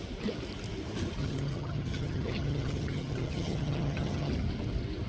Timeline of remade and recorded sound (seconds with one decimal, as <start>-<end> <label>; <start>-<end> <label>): 0.0-1.2 recorded; 1.2-4.3 remade; 4.3-5.1 recorded